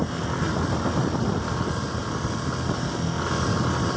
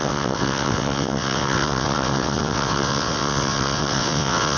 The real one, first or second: first